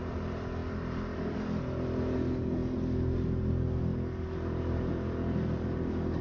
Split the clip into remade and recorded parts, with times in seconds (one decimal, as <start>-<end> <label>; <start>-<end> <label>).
0.0-6.2 recorded